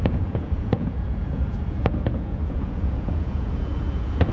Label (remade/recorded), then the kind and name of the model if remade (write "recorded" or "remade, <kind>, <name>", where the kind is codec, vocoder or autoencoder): remade, vocoder, Vocos